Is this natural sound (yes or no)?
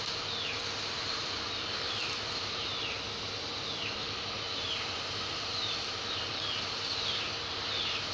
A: yes